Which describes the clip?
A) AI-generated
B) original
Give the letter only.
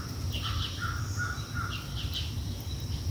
A